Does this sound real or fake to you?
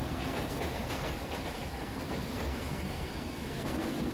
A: fake